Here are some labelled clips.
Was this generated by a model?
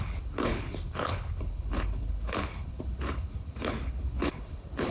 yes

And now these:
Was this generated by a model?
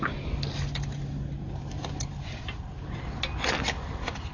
no